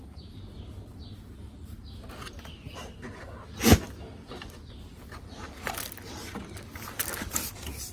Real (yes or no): yes